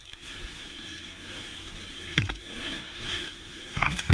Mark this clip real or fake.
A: fake